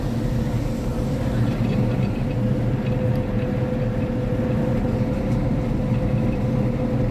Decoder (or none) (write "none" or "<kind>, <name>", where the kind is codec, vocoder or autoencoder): none